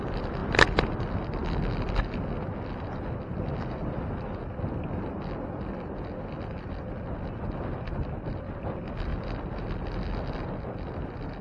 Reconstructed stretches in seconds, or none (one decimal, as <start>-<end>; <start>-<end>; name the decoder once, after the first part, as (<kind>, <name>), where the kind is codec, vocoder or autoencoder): 9.1-9.7 (vocoder, BigVGAN v2)